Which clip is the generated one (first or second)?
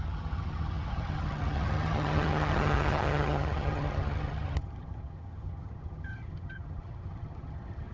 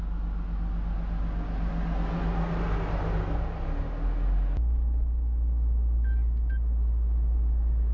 first